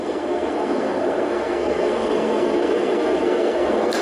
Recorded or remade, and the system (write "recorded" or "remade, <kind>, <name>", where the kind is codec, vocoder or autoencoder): remade, codec, SNAC